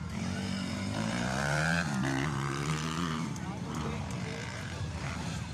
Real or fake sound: fake